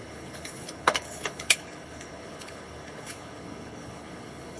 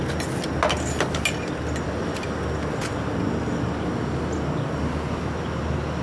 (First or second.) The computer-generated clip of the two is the first